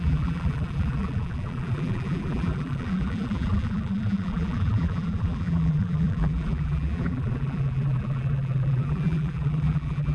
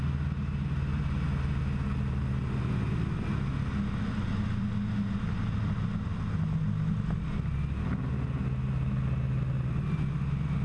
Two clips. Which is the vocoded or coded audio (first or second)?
first